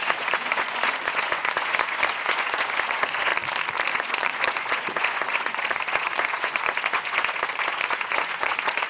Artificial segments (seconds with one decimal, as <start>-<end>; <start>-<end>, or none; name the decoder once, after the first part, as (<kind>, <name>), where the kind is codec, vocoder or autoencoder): 0.0-3.3 (vocoder, Vocos); 3.9-8.9